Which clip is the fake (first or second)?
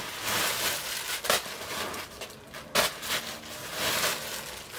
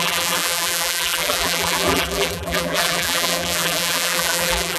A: second